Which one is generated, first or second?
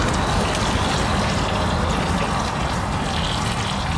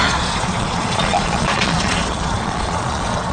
second